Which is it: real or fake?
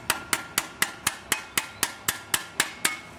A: real